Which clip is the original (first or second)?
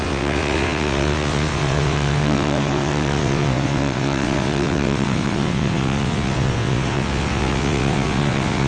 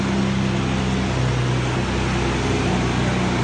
second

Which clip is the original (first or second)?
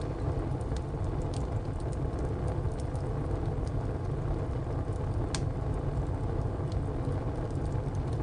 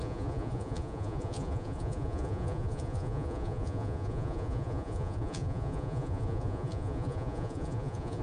first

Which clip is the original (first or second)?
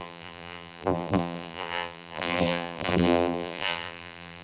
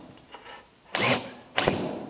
second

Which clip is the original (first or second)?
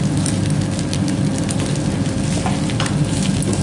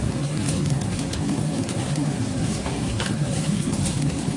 first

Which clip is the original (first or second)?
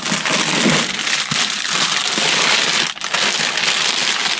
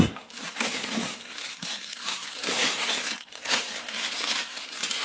first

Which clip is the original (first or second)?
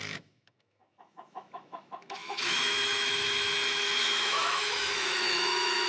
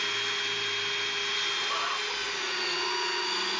second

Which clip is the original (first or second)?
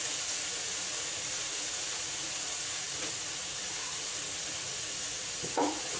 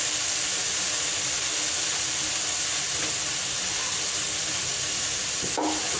second